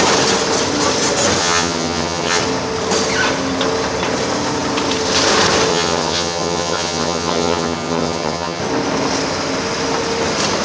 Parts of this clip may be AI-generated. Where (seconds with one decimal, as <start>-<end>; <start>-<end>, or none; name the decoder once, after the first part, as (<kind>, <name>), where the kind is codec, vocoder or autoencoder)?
1.4-2.4 (vocoder, HiFi-GAN); 5.7-8.6